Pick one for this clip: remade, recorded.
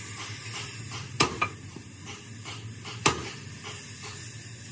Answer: recorded